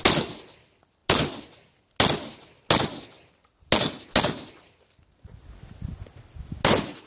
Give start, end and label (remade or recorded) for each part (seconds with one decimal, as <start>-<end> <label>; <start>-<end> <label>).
0.0-7.1 recorded

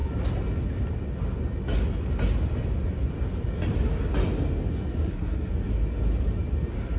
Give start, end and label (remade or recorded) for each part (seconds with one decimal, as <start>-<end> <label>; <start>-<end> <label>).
0.0-5.0 recorded; 5.0-5.5 remade; 5.5-7.0 recorded